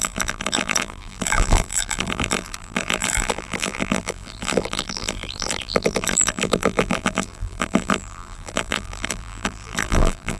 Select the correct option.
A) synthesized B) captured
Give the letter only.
A